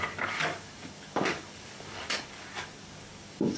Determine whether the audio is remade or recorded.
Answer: remade